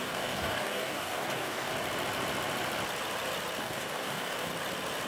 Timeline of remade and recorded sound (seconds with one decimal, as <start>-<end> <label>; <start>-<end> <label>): 0.0-1.7 remade; 1.7-3.6 recorded; 3.6-4.5 remade; 4.5-5.1 recorded